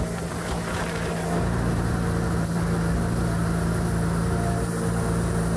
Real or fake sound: real